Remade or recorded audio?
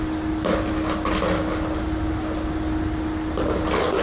recorded